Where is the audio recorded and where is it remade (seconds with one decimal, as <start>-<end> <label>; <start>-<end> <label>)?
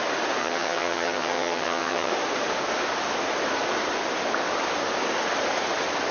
0.0-0.4 recorded; 0.4-2.1 remade; 2.1-6.1 recorded